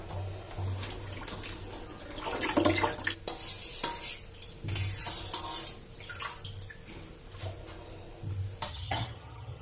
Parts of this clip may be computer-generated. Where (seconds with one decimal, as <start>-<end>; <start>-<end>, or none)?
8.7-9.6